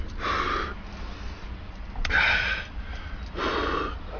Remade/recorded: recorded